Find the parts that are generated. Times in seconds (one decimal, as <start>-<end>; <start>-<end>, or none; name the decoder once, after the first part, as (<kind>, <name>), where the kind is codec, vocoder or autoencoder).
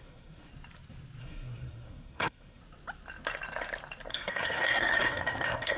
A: 0.0-0.5 (codec, SNAC); 1.2-2.6; 4.1-5.8